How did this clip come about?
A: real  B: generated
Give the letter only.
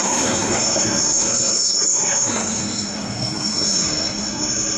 B